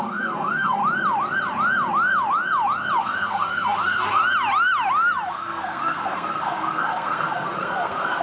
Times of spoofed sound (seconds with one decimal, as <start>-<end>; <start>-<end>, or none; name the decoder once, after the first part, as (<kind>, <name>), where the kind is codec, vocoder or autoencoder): 0.0-0.8 (codec, SNAC); 3.0-4.2; 5.3-8.2